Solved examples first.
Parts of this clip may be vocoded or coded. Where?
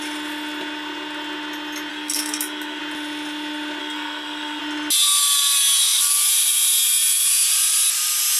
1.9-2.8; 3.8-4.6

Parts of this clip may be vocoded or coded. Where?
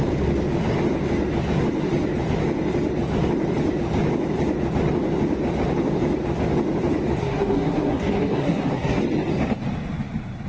7.2-9.0